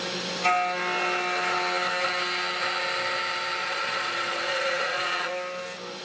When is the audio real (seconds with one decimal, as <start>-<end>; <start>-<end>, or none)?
0.0-3.6; 5.3-6.0